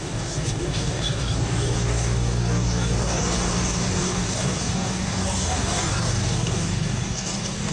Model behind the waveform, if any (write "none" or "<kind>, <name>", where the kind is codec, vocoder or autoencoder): codec, DAC